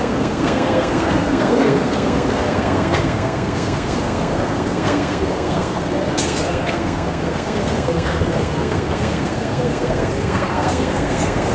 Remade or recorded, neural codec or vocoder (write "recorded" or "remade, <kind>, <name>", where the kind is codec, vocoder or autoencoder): remade, codec, SNAC